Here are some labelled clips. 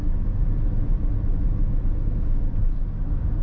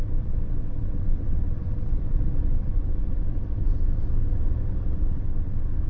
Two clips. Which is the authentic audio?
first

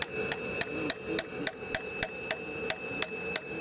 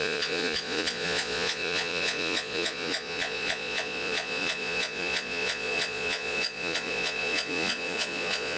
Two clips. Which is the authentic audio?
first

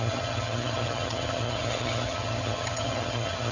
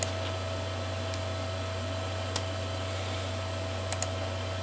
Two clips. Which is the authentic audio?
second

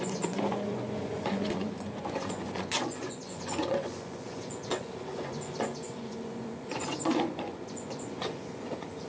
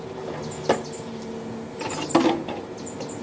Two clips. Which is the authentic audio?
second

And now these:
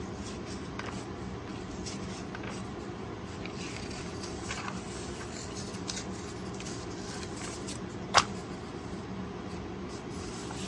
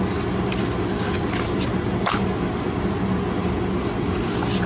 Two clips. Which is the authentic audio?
second